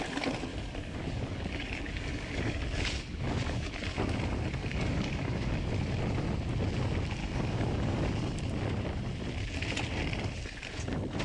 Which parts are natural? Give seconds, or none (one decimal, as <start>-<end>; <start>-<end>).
0.0-0.5; 3.7-4.6; 5.7-7.2; 8.1-11.2